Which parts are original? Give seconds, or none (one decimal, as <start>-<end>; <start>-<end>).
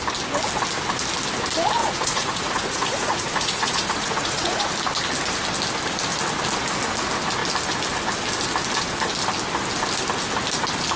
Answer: 0.0-1.8; 4.7-11.0